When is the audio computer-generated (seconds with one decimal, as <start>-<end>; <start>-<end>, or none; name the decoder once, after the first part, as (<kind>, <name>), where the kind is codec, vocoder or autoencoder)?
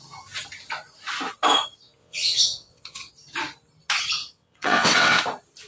2.0-3.1 (vocoder, WaveNeXt); 4.2-5.2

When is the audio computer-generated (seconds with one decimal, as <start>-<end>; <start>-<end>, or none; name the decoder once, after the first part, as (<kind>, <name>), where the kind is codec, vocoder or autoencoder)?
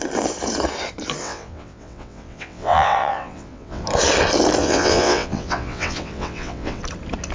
1.2-3.8 (vocoder, WaveNeXt); 4.6-6.8